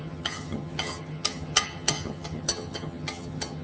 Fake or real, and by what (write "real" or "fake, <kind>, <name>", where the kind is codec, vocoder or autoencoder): fake, vocoder, HiFi-GAN